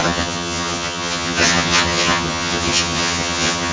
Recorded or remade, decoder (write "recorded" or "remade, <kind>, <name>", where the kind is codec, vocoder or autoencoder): remade, vocoder, HiFi-GAN